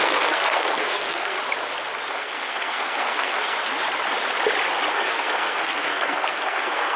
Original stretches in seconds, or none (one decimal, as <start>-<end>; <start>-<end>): 1.4-2.1; 3.7-4.9